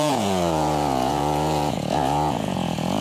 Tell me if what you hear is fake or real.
fake